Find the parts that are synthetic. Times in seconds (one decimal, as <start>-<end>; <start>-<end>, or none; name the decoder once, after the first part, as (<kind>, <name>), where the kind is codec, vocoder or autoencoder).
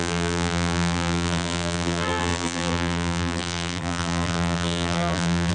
0.0-5.5 (vocoder, BigVGAN v2)